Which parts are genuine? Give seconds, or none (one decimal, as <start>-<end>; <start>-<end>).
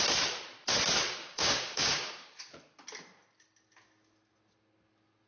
0.0-1.2; 2.4-5.3